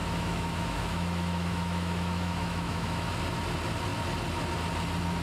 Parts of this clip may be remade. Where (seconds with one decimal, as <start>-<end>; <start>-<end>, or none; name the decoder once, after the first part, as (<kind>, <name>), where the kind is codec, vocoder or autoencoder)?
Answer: 0.0-3.1 (autoencoder, DAC-VAE)